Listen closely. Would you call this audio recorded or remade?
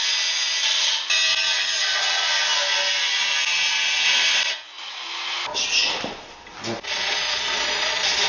recorded